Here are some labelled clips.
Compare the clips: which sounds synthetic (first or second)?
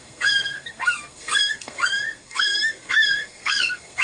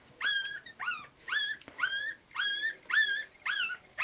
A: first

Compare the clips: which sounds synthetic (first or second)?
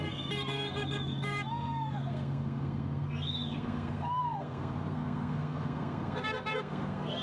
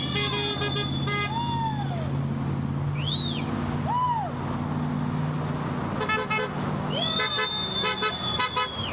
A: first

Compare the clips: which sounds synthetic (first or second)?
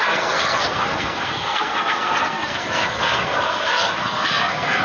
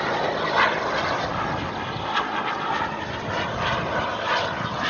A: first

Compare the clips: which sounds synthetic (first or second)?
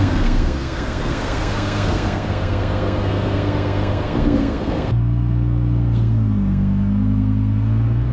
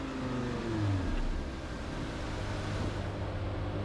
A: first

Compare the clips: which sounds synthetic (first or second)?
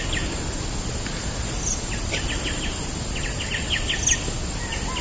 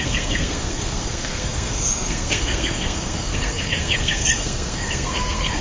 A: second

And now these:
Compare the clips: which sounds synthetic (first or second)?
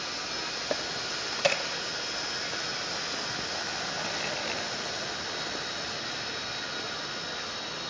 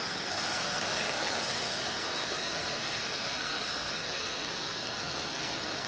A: second